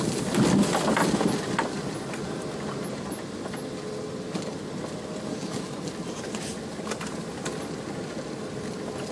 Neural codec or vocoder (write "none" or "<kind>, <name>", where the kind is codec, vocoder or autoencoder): none